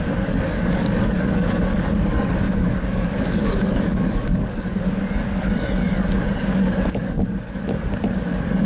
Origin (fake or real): fake